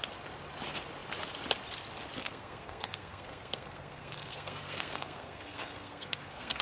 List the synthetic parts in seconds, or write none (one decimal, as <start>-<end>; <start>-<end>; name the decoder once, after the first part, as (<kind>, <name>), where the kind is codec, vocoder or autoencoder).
2.2-6.6 (codec, SNAC)